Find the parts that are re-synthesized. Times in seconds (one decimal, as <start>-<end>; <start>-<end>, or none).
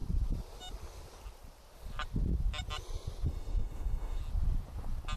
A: 3.3-4.2